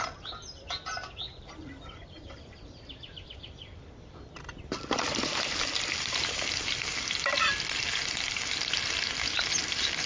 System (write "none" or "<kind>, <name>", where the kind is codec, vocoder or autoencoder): vocoder, BigVGAN v2